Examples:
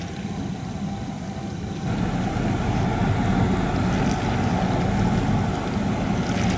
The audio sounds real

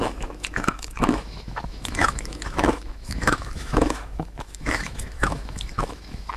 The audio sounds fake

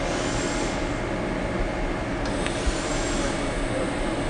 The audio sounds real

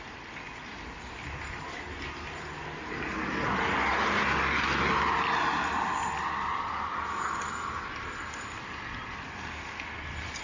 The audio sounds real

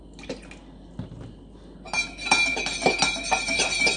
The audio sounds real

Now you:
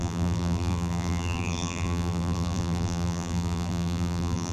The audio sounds fake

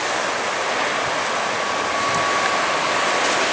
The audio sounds real